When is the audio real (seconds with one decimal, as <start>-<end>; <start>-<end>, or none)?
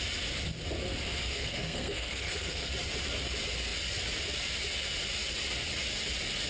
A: 0.0-1.3; 2.7-6.5